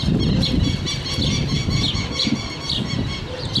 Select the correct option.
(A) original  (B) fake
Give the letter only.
A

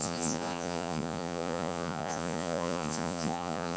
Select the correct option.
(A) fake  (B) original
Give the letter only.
A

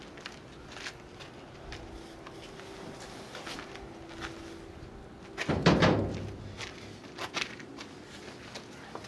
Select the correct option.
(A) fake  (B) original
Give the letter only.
B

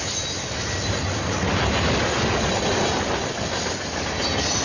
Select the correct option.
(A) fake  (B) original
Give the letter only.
B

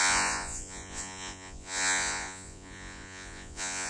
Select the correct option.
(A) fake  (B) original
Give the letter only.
A